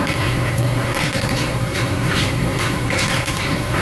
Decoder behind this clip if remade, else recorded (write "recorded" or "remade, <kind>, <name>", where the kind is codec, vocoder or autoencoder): remade, codec, SNAC